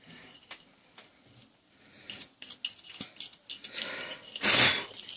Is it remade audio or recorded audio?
recorded